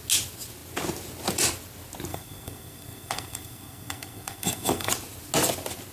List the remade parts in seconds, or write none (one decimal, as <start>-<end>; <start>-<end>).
2.1-4.9